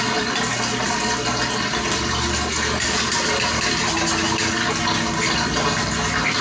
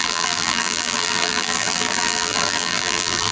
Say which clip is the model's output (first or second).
second